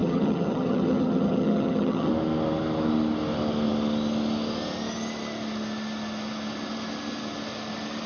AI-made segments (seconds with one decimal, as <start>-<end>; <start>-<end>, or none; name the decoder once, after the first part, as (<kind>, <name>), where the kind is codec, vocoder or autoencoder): 0.0-2.1 (vocoder, HiFi-GAN)